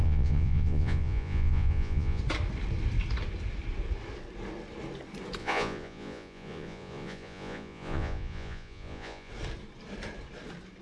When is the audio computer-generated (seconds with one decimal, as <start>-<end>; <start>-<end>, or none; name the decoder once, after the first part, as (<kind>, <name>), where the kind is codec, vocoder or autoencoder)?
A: 0.0-2.2 (vocoder, Vocos); 5.4-9.3